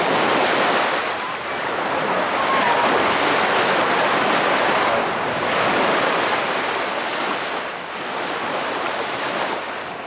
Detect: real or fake real